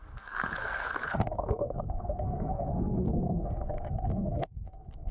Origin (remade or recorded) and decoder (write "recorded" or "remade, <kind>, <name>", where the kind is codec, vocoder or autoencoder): remade, codec, SNAC